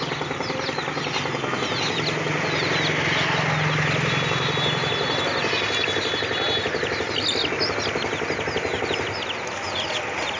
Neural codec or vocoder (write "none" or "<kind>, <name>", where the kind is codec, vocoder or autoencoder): none